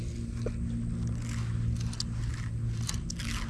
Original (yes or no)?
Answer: yes